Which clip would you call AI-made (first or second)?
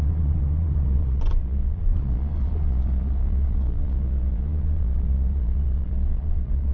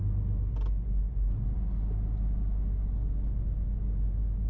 first